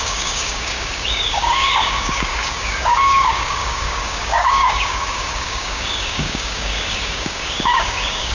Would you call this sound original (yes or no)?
no